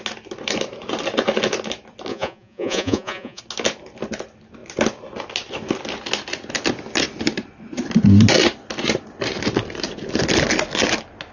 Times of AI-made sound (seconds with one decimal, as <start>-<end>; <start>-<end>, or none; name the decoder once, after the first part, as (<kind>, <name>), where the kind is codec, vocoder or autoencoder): 2.1-3.4 (vocoder, Vocos)